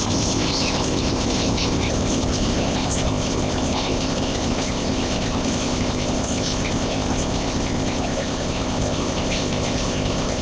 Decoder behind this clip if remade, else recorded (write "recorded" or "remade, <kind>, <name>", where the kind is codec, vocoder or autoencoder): remade, codec, ZipCodec